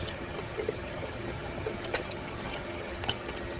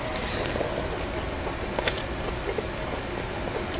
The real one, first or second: second